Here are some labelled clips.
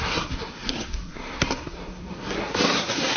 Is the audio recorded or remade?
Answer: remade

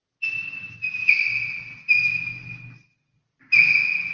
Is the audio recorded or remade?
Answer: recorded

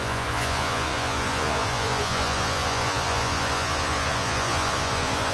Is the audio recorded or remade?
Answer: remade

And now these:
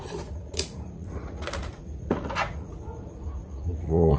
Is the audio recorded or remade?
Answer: remade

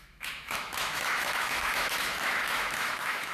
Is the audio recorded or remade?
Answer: remade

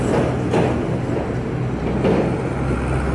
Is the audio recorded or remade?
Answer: recorded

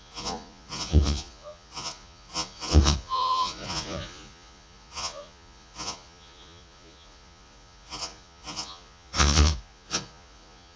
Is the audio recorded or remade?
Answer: remade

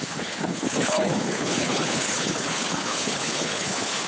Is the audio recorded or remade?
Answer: remade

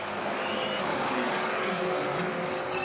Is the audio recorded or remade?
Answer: remade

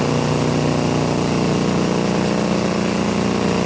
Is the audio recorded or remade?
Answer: recorded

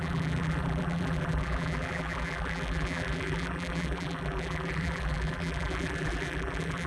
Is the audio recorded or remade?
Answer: remade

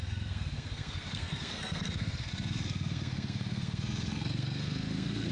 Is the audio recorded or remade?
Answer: remade